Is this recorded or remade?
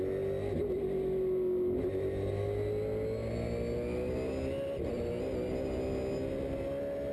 recorded